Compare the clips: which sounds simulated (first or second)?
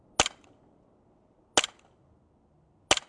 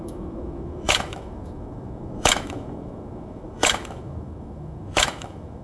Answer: second